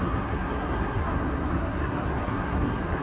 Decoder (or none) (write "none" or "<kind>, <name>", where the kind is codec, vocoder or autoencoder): codec, SNAC